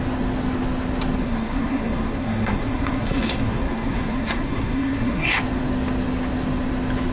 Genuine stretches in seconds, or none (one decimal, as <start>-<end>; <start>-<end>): 0.0-1.2; 5.4-7.1